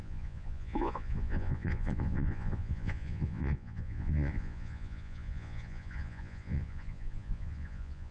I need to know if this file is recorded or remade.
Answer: remade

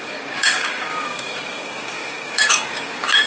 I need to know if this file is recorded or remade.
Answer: remade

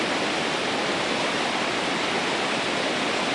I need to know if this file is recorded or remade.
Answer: recorded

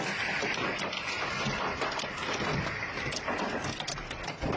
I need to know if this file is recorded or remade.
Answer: recorded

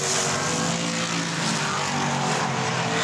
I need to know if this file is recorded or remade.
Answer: recorded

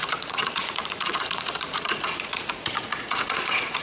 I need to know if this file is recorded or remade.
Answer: remade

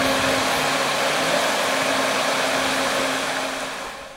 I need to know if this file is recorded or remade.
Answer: recorded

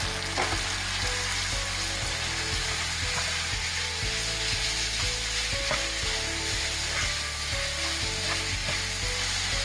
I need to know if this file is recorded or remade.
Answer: recorded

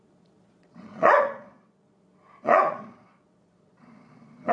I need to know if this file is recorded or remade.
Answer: remade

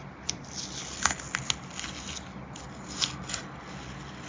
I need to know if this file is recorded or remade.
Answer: recorded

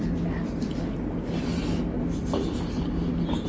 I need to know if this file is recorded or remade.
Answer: recorded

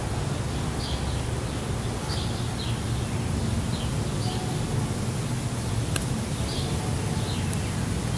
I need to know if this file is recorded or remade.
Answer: recorded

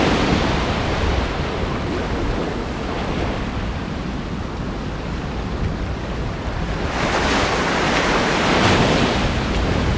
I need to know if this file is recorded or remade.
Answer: recorded